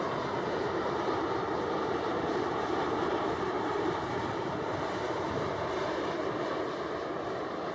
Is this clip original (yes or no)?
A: no